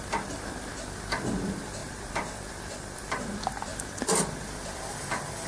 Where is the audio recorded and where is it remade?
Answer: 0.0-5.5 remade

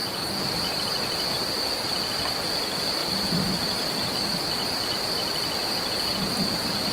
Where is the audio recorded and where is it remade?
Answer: 0.0-6.9 recorded

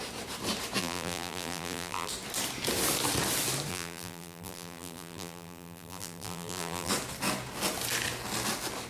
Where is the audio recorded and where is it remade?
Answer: 0.0-0.8 recorded; 0.8-2.1 remade; 2.1-3.7 recorded; 3.7-6.9 remade; 6.9-8.9 recorded

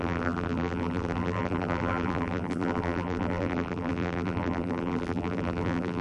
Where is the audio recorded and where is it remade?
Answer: 0.0-6.0 remade

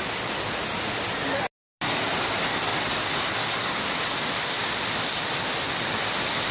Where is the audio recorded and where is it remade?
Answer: 0.0-2.7 recorded; 2.7-4.0 remade; 4.0-4.6 recorded; 4.6-5.3 remade; 5.3-6.5 recorded

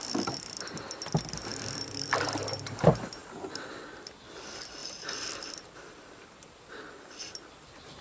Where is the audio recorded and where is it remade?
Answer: 0.0-1.5 recorded; 1.5-2.2 remade; 2.2-4.8 recorded; 4.8-6.6 remade; 6.6-8.0 recorded